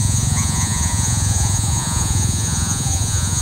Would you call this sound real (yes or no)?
no